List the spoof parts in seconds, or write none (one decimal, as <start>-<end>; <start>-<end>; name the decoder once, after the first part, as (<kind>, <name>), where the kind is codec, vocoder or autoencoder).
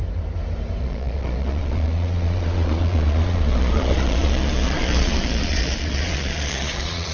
0.8-7.1 (vocoder, Vocos)